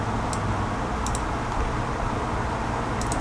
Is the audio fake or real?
real